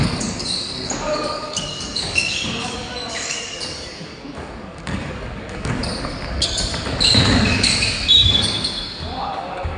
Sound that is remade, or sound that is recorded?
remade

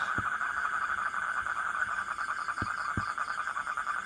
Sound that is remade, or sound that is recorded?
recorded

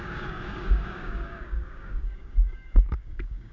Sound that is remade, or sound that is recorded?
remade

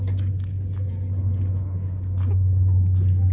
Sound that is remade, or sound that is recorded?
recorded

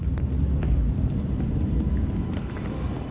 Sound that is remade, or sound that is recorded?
recorded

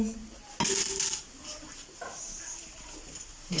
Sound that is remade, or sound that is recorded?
recorded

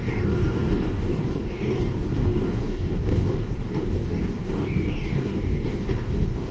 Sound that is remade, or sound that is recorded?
remade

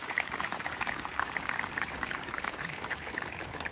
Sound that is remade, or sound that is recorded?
remade